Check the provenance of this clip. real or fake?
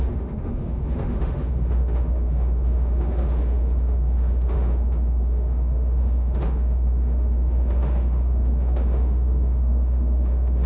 fake